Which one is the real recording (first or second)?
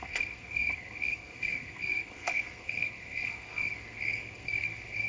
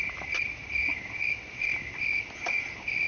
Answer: second